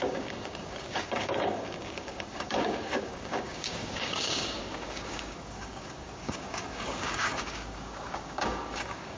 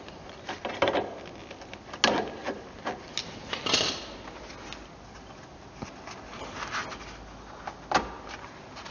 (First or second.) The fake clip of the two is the first